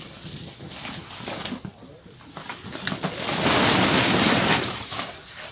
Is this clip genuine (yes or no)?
yes